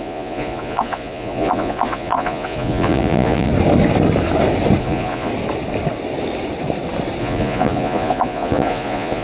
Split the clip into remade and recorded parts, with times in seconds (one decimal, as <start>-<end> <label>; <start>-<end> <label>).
0.0-3.5 remade; 3.5-4.8 recorded; 4.8-5.3 remade; 5.3-7.2 recorded; 7.2-9.2 remade